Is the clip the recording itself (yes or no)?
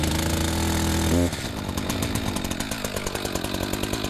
yes